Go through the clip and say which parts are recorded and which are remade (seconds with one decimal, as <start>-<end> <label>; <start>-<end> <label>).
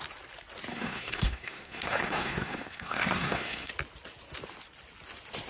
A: 0.0-0.7 recorded; 0.7-3.7 remade; 3.7-5.5 recorded